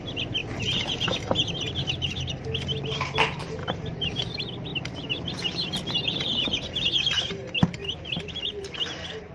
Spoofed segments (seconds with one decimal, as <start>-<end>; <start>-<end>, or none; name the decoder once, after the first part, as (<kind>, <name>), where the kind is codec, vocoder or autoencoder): 3.6-4.2 (vocoder, BigVGAN v2)